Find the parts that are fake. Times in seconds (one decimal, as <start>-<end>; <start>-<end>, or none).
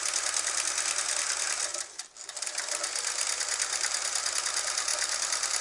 none